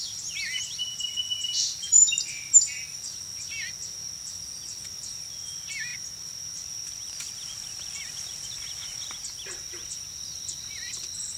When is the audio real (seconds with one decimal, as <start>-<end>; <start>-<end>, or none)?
0.0-11.4